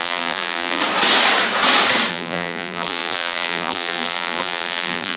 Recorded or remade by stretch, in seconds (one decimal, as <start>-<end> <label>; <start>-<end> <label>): 0.0-0.8 remade; 0.8-2.1 recorded; 2.1-5.2 remade